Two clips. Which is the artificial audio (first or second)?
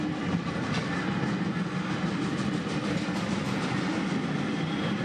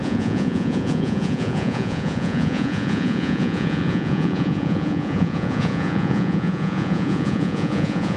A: second